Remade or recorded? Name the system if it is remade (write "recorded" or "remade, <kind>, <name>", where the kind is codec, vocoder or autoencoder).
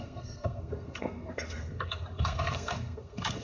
remade, codec, SNAC